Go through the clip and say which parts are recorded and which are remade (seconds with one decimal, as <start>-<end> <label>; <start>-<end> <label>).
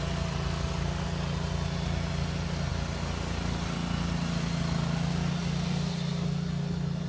0.0-7.1 recorded